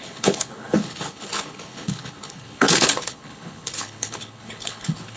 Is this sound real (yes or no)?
no